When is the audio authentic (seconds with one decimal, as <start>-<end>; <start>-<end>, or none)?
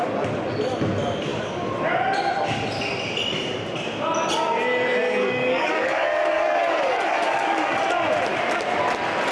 0.0-5.2; 7.8-9.3